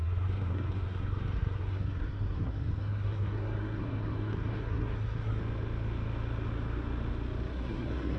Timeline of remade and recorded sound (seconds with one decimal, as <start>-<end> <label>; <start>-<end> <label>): 0.0-5.4 remade; 5.4-7.5 recorded; 7.5-8.2 remade